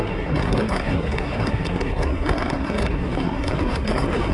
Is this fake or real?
fake